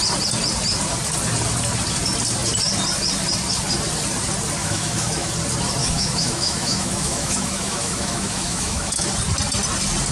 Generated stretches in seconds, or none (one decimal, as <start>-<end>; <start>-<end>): 4.6-5.3; 5.8-9.1